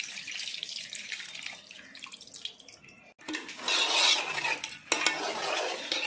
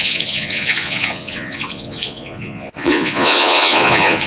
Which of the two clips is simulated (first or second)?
second